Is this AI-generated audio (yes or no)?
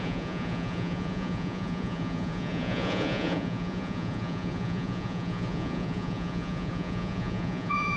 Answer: yes